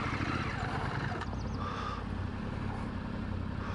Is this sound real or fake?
real